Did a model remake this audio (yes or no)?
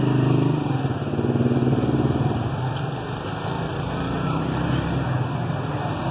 no